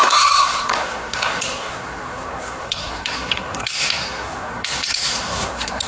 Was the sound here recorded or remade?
remade